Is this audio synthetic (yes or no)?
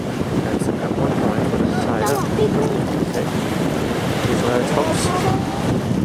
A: yes